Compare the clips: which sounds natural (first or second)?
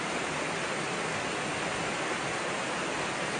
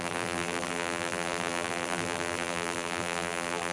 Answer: first